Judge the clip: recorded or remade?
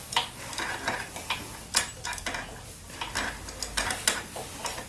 recorded